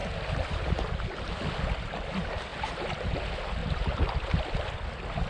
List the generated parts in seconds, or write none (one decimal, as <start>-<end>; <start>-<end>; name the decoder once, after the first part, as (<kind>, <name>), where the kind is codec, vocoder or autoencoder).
3.6-4.5 (vocoder, BigVGAN v2)